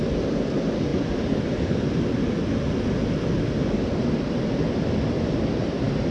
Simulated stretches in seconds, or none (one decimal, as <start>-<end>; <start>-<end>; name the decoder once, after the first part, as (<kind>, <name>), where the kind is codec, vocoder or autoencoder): none